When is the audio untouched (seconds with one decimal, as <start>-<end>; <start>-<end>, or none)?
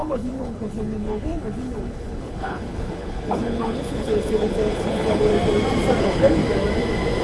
5.3-6.0; 6.4-7.2